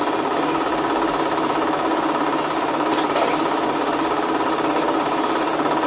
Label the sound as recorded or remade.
recorded